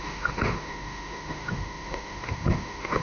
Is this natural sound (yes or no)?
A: no